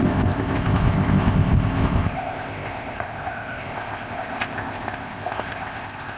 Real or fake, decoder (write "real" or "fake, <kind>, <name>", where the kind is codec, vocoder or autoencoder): fake, codec, ZipCodec